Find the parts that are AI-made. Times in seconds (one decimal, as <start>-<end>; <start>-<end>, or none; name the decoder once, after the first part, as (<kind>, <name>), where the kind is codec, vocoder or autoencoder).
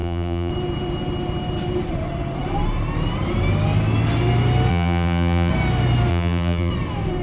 0.0-0.5 (vocoder, BigVGAN v2); 4.7-5.5; 6.1-6.7